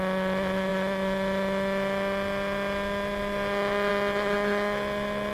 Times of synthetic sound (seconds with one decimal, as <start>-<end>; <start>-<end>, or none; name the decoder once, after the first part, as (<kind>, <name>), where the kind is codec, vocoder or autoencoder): none

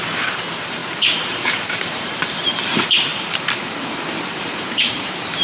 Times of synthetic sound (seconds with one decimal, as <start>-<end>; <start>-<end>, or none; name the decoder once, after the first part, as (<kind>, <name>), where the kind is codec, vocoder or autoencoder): 0.0-5.4 (vocoder, BigVGAN v2)

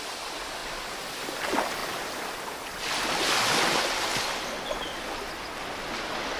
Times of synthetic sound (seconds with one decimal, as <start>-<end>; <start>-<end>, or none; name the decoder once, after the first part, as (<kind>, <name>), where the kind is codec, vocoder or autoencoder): none

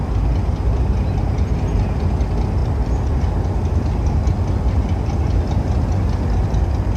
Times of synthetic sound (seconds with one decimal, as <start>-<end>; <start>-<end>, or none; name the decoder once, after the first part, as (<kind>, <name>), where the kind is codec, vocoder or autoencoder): 2.6-3.1 (vocoder, BigVGAN v2)